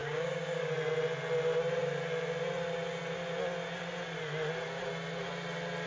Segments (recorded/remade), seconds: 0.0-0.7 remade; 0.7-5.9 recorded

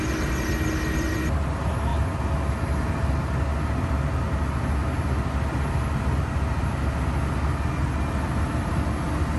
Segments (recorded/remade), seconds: 0.0-9.4 recorded

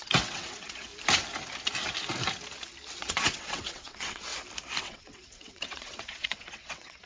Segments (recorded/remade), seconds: 0.0-0.9 remade; 0.9-3.0 recorded; 3.0-4.3 remade; 4.3-4.8 recorded; 4.8-7.1 remade

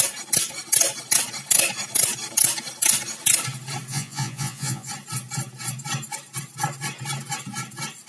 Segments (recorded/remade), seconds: 0.0-3.9 recorded; 3.9-4.9 remade; 4.9-8.1 recorded

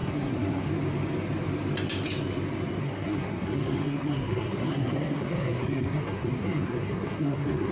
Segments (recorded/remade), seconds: 0.0-0.7 remade; 0.7-2.8 recorded; 2.8-7.7 remade